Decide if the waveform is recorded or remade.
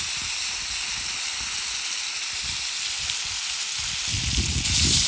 recorded